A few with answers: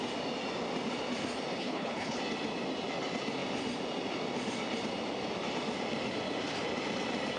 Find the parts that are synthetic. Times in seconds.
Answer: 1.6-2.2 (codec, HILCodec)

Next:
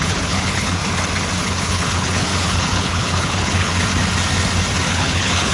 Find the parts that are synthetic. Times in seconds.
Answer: 0.0-0.8 (codec, HILCodec); 1.4-3.7; 4.9-5.5